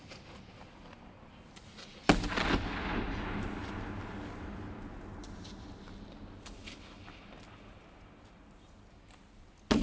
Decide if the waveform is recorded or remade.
recorded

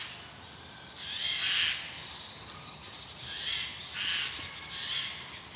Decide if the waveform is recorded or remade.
recorded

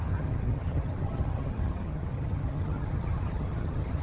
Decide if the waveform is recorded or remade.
remade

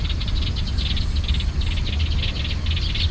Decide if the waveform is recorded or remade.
recorded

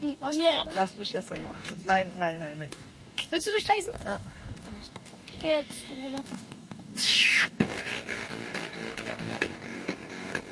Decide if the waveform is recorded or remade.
remade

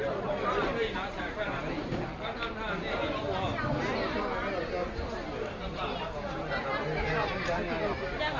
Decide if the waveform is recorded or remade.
recorded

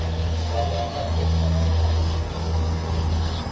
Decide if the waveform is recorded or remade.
remade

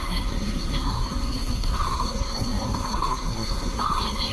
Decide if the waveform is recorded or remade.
remade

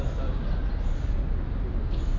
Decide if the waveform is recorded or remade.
recorded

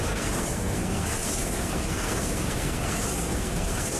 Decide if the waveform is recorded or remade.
remade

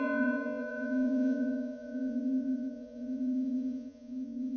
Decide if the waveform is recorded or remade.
remade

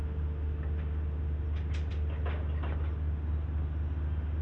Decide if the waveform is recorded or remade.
recorded